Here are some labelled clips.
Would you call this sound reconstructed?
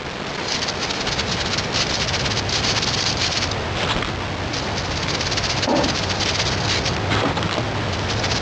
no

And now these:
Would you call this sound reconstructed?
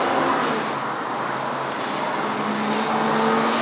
no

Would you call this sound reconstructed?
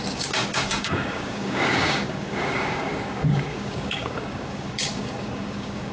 yes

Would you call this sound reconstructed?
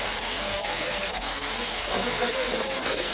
yes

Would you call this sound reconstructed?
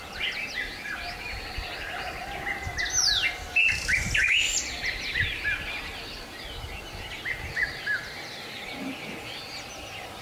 no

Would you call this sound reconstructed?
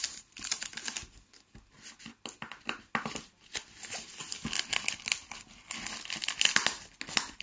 no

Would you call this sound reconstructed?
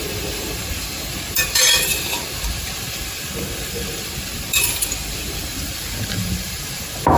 yes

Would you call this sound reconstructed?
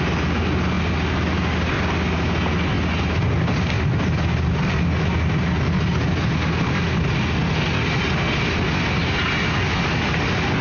no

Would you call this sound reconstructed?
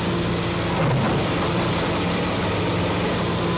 no